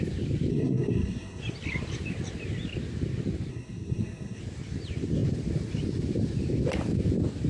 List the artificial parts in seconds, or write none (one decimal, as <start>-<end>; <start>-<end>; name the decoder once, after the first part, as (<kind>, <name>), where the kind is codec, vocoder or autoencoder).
0.5-1.4 (codec, SNAC); 3.5-4.4